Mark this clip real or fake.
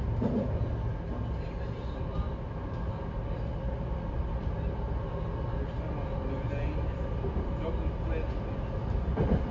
real